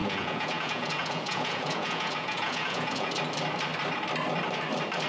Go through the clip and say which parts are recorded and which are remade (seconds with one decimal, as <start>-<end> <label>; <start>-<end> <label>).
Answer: 0.0-3.1 remade; 3.1-5.1 recorded